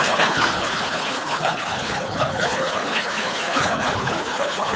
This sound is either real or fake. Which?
fake